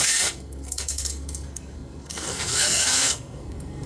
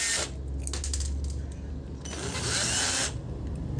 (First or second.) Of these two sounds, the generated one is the first